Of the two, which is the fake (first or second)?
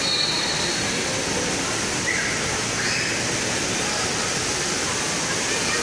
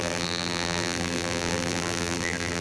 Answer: second